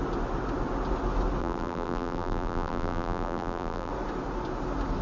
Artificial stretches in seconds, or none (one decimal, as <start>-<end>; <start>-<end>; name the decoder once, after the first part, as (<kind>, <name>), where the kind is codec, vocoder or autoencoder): 1.4-3.9 (vocoder, BigVGAN v2)